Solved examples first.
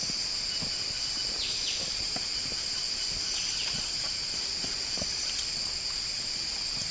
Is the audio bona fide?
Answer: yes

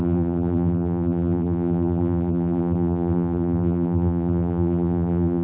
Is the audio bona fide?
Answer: no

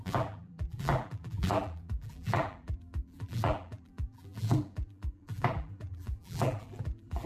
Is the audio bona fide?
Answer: no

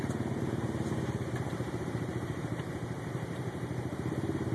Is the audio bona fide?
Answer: no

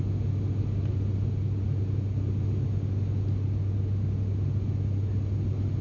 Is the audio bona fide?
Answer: yes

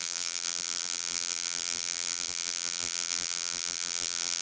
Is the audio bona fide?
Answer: no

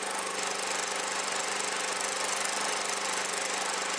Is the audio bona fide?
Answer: yes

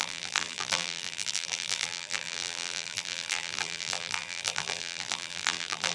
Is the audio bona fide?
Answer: no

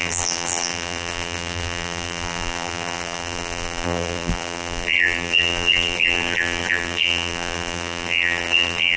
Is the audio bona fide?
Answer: no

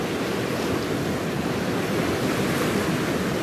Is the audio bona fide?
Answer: yes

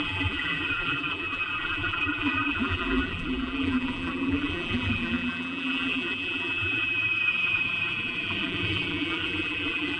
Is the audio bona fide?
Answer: no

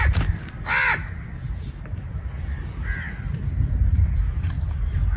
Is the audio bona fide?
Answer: yes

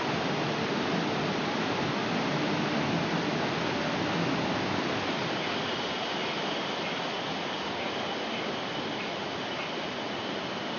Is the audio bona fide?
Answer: yes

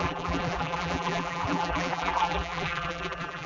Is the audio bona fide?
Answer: no